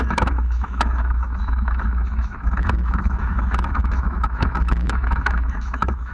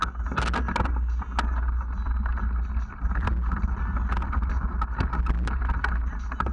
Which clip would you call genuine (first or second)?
second